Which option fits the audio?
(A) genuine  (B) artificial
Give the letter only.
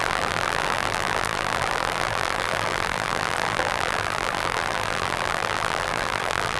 B